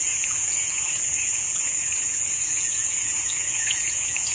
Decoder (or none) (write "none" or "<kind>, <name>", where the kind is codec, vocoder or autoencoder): vocoder, Vocos